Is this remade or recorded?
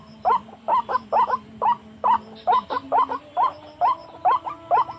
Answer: recorded